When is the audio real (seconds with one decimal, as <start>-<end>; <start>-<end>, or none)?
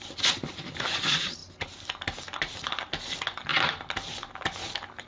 0.0-5.1